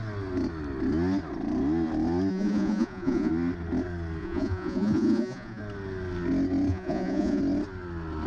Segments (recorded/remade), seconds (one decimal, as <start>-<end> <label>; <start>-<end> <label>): 0.0-2.3 recorded; 2.3-3.3 remade; 3.3-4.2 recorded; 4.2-5.6 remade; 5.6-6.7 recorded; 6.7-7.4 remade; 7.4-8.3 recorded